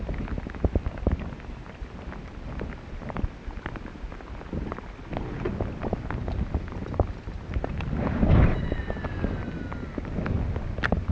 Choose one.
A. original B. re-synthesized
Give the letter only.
A